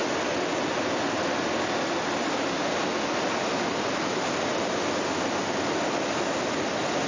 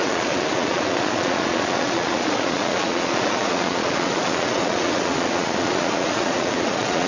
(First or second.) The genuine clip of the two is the first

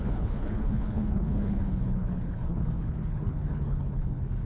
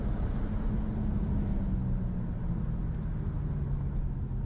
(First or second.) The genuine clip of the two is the second